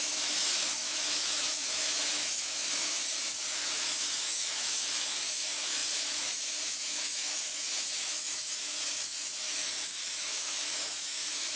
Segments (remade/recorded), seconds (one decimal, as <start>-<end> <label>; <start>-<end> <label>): 0.0-11.6 remade